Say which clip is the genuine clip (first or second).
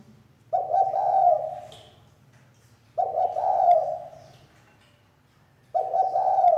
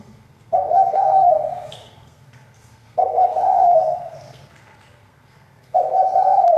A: first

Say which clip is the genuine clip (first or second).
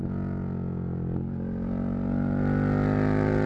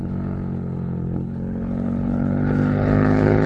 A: first